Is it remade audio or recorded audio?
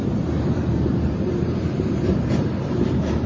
remade